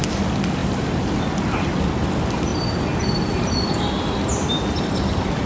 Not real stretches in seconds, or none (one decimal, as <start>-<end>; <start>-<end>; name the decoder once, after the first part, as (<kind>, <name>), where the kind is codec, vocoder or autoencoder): 0.6-1.5 (vocoder, BigVGAN v2)